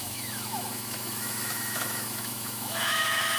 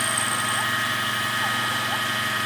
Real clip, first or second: second